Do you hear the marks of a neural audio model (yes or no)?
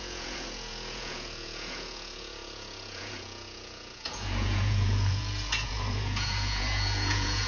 yes